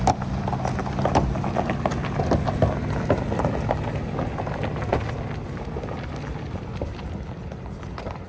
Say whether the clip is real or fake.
real